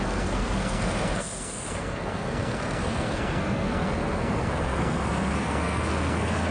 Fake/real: fake